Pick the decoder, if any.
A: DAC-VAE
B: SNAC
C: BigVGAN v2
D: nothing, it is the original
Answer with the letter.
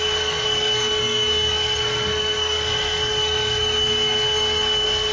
B